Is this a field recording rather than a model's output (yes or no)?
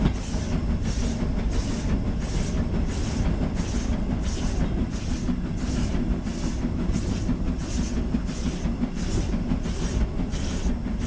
yes